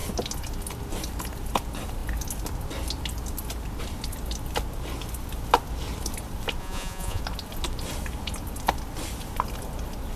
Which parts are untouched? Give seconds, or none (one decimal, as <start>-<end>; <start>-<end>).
0.0-6.6; 7.2-10.2

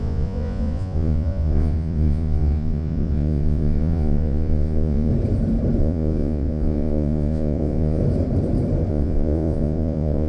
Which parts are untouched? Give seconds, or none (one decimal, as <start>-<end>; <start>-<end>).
5.1-5.8; 8.0-8.9

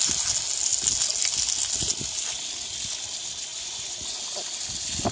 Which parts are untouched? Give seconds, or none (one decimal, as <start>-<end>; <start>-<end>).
0.0-3.5; 4.2-5.1

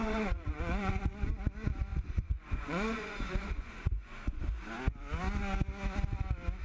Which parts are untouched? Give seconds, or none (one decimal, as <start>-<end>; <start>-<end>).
1.3-1.9; 4.4-6.6